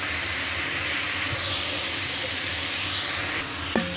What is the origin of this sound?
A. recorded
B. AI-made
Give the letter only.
A